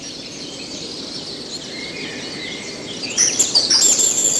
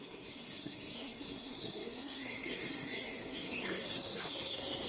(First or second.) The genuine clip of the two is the first